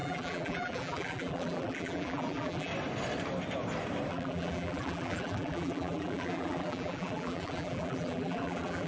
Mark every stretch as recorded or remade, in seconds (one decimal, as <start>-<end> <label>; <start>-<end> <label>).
0.0-2.7 remade; 2.7-4.1 recorded; 4.1-8.9 remade